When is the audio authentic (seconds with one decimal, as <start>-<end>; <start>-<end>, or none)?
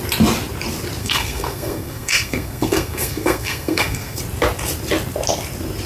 0.0-1.0; 4.2-5.9